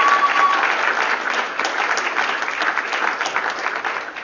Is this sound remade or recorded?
recorded